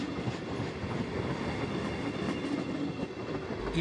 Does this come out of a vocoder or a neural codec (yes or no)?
no